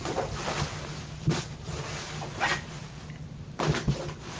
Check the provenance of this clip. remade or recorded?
recorded